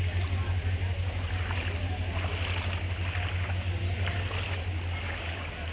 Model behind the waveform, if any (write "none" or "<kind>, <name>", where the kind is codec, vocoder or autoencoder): none